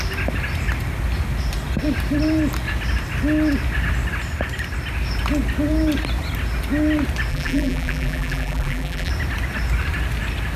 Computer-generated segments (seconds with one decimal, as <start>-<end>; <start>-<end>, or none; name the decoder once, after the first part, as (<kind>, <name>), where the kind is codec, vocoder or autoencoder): 7.3-9.1 (vocoder, BigVGAN v2)